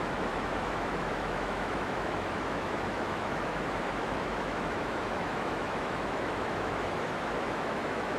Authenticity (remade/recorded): remade